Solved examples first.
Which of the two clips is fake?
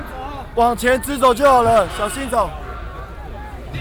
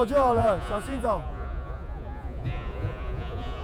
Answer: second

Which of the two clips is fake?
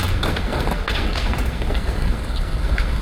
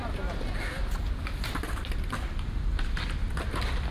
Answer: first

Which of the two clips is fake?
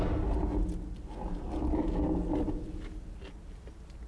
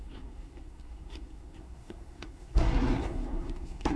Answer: second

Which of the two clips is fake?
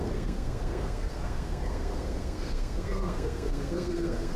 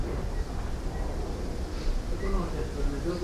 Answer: first